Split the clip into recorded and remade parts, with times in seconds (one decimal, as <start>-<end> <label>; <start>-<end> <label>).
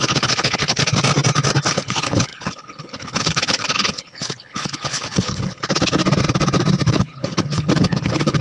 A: 0.0-0.9 remade; 0.9-1.7 recorded; 1.7-6.0 remade; 6.0-6.9 recorded; 6.9-8.4 remade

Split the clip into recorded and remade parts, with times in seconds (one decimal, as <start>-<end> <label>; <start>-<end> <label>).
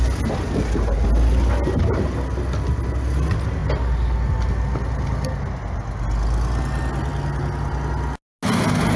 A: 0.0-9.0 recorded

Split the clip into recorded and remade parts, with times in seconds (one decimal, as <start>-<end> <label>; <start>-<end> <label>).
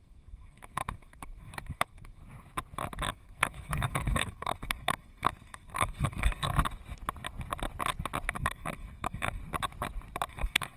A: 0.0-2.2 remade; 2.2-3.1 recorded; 3.1-6.5 remade; 6.5-8.3 recorded; 8.3-9.4 remade; 9.4-10.3 recorded; 10.3-10.8 remade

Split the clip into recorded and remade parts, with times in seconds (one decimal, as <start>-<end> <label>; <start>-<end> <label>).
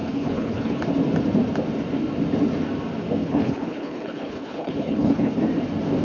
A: 0.0-0.8 remade; 0.8-3.2 recorded; 3.2-5.3 remade; 5.3-6.0 recorded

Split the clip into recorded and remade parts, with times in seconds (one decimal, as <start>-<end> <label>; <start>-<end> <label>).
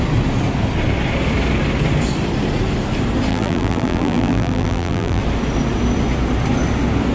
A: 0.0-3.3 recorded; 3.3-5.2 remade; 5.2-7.1 recorded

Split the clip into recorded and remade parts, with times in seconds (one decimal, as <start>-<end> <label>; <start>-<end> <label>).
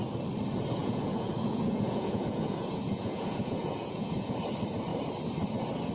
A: 0.0-0.8 recorded; 0.8-4.3 remade; 4.3-5.9 recorded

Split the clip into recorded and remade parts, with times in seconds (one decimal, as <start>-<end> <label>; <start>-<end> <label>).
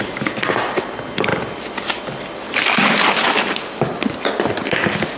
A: 0.0-5.2 recorded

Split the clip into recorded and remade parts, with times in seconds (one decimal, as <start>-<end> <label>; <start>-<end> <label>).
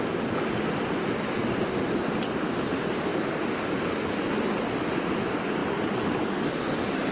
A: 0.0-7.1 recorded